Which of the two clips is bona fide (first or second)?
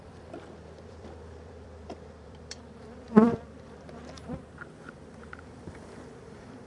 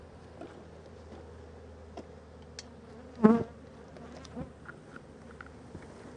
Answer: second